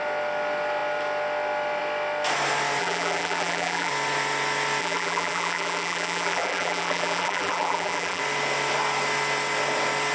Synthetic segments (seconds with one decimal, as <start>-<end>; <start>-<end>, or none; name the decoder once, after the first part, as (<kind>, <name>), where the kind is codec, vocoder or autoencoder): 2.8-3.9 (vocoder, BigVGAN v2); 4.8-8.2